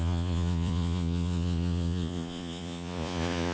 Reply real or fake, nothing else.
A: fake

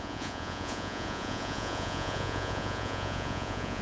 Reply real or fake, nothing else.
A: fake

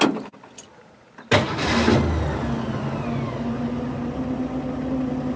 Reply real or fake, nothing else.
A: real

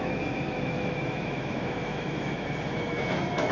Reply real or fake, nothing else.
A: fake